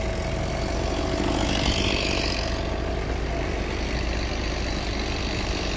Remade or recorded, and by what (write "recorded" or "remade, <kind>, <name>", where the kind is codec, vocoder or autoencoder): recorded